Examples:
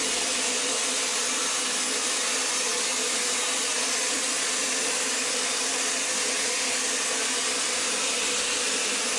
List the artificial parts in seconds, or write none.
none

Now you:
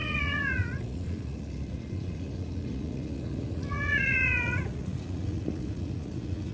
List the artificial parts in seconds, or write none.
0.0-6.5 (vocoder, Vocos)

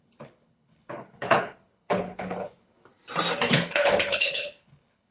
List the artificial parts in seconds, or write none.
0.0-2.9 (codec, HILCodec); 3.5-5.1

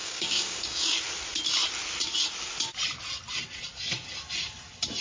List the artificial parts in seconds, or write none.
0.0-1.0 (codec, DAC)

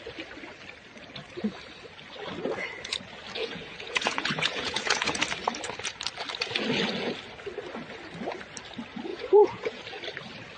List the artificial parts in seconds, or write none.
3.4-5.2 (vocoder, Vocos); 9.1-9.8

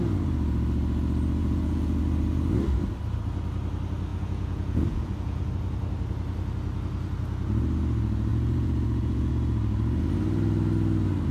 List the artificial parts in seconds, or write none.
1.4-2.0 (vocoder, Vocos); 4.1-5.5; 8.3-9.3

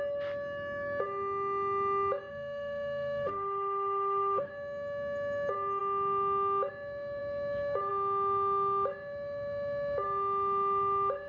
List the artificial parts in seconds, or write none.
2.3-4.5 (autoencoder, DAC-VAE)